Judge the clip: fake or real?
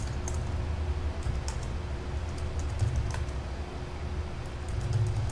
real